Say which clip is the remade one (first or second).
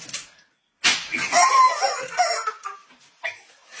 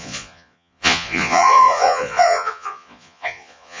second